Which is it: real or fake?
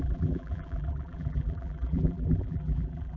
fake